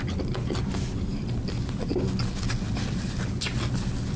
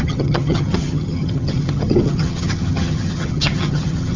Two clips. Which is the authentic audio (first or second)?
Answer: first